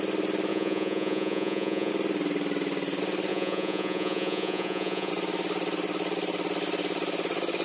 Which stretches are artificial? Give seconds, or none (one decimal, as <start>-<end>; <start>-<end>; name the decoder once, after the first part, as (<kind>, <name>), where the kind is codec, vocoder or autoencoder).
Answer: 0.5-1.9 (vocoder, Vocos); 3.3-5.1